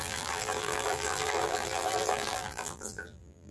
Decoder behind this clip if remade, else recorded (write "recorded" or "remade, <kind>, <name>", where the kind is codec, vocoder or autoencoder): remade, vocoder, BigVGAN v2